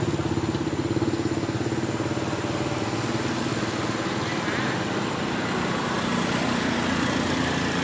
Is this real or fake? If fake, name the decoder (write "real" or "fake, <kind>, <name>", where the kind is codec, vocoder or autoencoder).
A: real